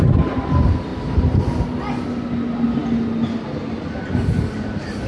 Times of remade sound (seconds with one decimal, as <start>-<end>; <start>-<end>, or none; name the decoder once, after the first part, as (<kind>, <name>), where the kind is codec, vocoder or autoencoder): 0.9-1.4 (vocoder, BigVGAN v2)